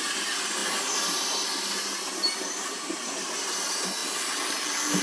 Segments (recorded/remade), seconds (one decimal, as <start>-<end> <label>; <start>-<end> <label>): 0.0-4.0 remade; 4.0-5.0 recorded